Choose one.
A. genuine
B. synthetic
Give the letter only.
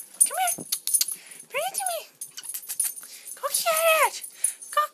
A